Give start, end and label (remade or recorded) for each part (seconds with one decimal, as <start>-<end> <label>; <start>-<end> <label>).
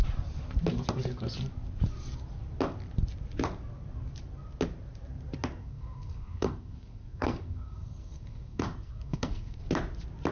0.0-5.6 recorded; 5.6-9.6 remade; 9.6-10.3 recorded